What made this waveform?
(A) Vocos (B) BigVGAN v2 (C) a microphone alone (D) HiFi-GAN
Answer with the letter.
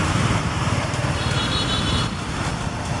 B